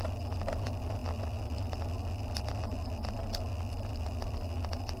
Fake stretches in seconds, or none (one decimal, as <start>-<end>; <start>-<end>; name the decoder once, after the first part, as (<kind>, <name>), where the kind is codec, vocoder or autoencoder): none